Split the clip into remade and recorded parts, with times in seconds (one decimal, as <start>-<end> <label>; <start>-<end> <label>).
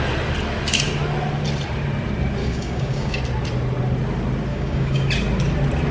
0.0-2.4 recorded; 2.4-3.2 remade; 3.2-4.5 recorded; 4.5-5.1 remade; 5.1-5.9 recorded